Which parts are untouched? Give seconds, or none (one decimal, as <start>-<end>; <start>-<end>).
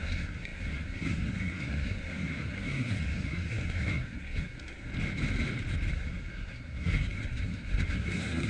4.9-5.9